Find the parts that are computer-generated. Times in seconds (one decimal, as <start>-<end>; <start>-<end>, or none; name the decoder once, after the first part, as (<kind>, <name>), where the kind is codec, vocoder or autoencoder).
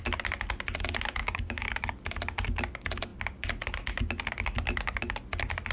1.2-1.7 (codec, DAC)